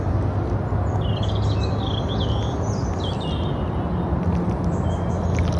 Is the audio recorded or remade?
recorded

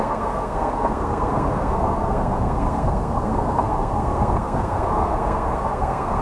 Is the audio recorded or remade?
remade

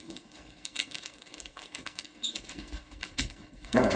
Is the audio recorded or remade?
remade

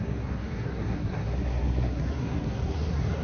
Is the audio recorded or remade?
remade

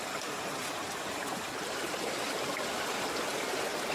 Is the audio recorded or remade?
recorded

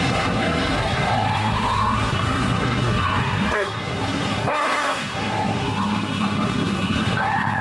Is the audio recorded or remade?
remade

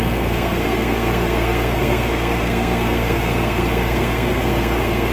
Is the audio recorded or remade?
remade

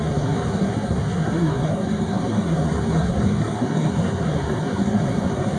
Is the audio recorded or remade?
remade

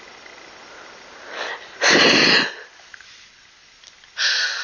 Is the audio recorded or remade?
recorded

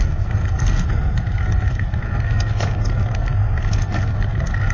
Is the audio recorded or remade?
remade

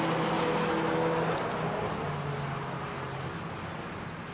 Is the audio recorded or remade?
recorded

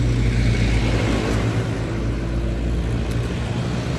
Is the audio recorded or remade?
recorded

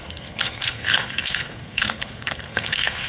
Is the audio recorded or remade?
remade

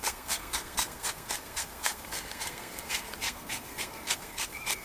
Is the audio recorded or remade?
remade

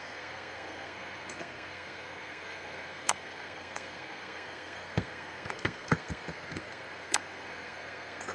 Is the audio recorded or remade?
remade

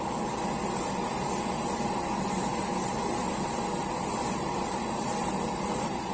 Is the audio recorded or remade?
recorded